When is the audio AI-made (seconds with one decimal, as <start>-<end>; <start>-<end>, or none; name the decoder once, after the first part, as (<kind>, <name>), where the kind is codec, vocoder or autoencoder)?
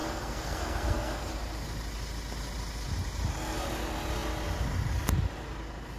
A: 0.0-1.3 (codec, SNAC)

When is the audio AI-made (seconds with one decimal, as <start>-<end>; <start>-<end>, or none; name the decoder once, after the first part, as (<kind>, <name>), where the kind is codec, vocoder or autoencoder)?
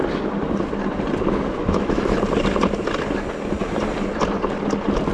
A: 1.6-2.1 (autoencoder, DAC-VAE)